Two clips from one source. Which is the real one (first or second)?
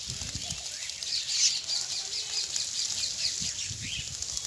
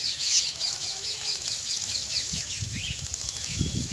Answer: first